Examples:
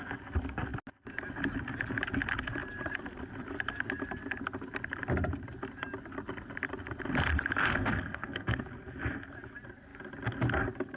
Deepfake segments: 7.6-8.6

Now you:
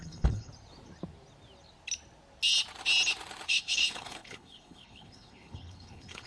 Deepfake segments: 0.0-0.5; 3.5-6.3